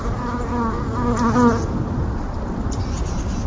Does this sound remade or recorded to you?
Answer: recorded